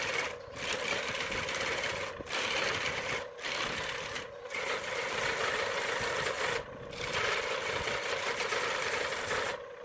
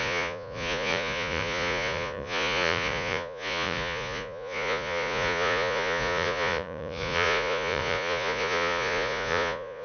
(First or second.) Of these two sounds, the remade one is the second